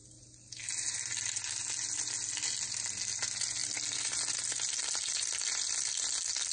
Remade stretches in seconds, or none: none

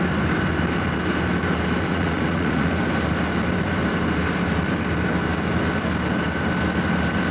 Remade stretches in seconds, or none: 1.9-2.7 (vocoder, Vocos)

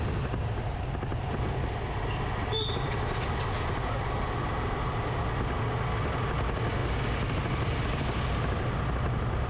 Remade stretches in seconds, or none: none

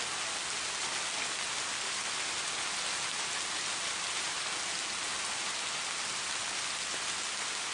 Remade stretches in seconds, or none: none

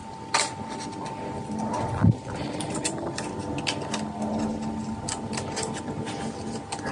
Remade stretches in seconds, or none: none